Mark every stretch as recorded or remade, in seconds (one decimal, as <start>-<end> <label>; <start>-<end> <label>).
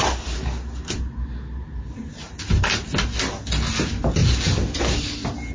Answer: 0.0-1.6 recorded; 1.6-3.0 remade; 3.0-5.5 recorded